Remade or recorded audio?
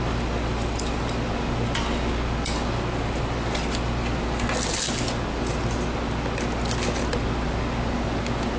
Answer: recorded